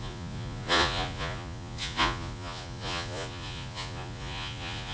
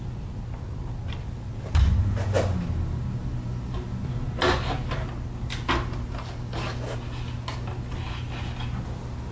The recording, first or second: second